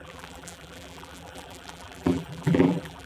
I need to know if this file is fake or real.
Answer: fake